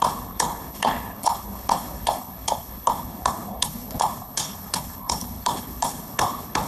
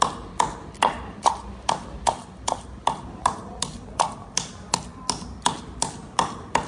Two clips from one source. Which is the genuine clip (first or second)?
second